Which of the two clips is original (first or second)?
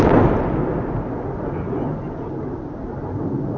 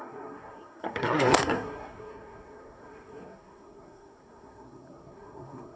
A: first